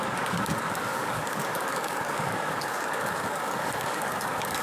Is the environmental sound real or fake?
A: fake